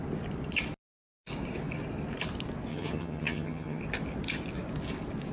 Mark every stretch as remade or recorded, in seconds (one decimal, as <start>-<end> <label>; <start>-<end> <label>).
0.0-2.7 recorded; 2.7-3.8 remade; 3.8-5.3 recorded